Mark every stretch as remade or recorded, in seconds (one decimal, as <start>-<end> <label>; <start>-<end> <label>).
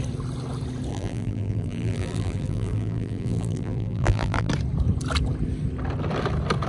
0.0-0.9 recorded; 0.9-4.5 remade; 4.5-6.7 recorded